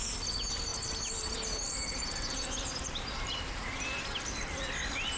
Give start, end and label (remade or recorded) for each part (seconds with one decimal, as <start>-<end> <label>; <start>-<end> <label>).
0.0-0.7 recorded; 0.7-3.4 remade; 3.4-5.2 recorded